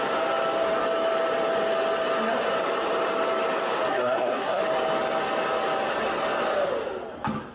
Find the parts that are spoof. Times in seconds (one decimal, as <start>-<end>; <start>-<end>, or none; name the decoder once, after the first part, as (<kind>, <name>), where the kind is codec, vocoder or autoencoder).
3.9-4.6 (codec, SNAC)